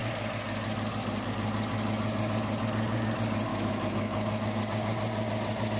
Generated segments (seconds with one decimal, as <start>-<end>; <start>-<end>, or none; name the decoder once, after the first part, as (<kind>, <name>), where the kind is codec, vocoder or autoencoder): 3.5-4.6 (autoencoder, DAC-VAE)